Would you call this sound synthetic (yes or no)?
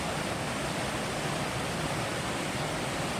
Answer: no